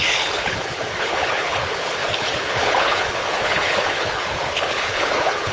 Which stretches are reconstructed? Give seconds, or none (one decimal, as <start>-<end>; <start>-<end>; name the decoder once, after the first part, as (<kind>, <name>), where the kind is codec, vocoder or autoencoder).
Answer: 0.0-5.5 (codec, HILCodec)